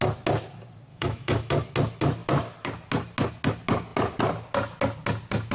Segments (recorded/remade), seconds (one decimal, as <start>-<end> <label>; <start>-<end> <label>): 0.0-0.9 recorded; 0.9-1.5 remade; 1.5-5.5 recorded

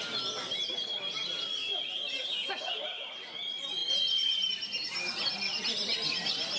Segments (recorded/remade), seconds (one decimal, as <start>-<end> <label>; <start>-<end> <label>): 0.0-6.6 recorded

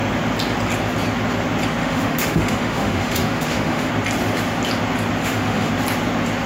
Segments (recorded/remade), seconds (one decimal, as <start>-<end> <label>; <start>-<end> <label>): 0.0-1.8 recorded; 1.8-3.9 remade; 3.9-5.2 recorded; 5.2-5.7 remade; 5.7-6.5 recorded